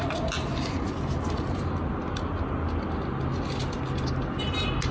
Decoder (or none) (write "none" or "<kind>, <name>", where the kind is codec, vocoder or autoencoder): none